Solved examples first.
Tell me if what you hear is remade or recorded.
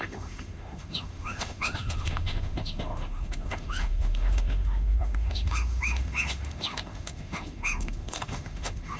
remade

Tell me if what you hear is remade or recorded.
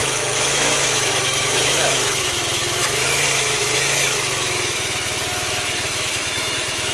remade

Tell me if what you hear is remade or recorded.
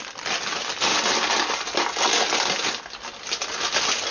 recorded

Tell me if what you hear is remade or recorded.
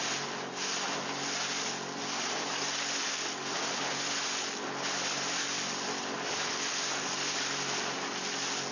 recorded